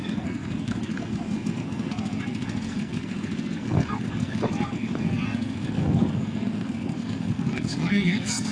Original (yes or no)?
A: no